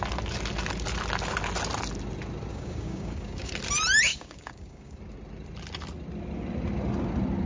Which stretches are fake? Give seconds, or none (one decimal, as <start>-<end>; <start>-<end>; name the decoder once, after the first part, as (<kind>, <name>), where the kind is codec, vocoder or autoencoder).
2.5-3.5 (codec, DAC); 4.1-5.0